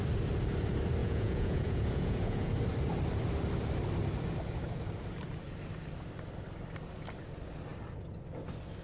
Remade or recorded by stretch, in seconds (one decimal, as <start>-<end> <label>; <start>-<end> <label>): 0.0-1.0 recorded; 1.0-2.5 remade; 2.5-8.8 recorded